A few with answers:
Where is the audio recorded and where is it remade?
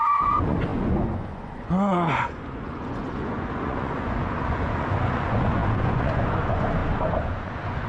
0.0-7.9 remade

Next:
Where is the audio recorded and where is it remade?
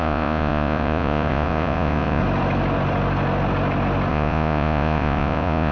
0.0-2.2 remade; 2.2-4.1 recorded; 4.1-5.7 remade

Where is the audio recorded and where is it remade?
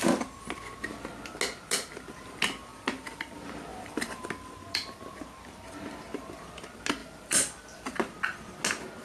0.0-2.7 recorded; 2.7-3.3 remade; 3.3-3.7 recorded; 3.7-4.3 remade; 4.3-7.0 recorded; 7.0-8.1 remade; 8.1-9.0 recorded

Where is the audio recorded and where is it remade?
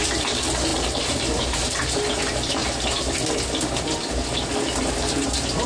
0.0-2.6 remade; 2.6-4.8 recorded; 4.8-5.7 remade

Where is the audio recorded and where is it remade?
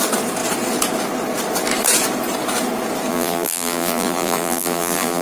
0.0-3.1 recorded; 3.1-5.2 remade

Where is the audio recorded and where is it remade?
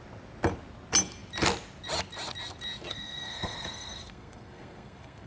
0.0-2.9 recorded; 2.9-5.3 remade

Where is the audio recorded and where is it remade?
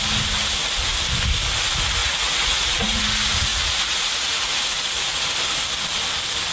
0.0-2.0 recorded; 2.0-3.0 remade; 3.0-3.5 recorded; 3.5-5.3 remade; 5.3-6.5 recorded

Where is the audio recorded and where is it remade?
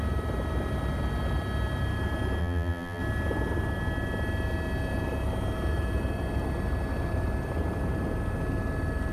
0.0-2.4 recorded; 2.4-3.0 remade; 3.0-9.1 recorded